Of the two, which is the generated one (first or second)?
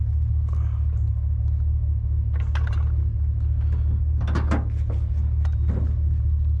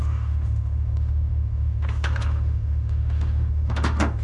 second